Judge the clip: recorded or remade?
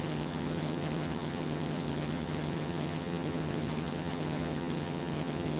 remade